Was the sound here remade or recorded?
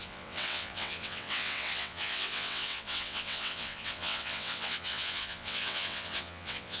remade